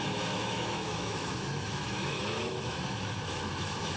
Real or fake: fake